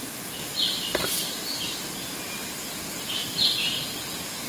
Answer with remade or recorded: recorded